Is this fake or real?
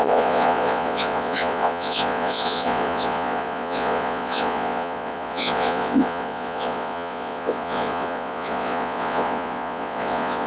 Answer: fake